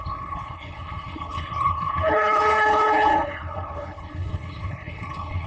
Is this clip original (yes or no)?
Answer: no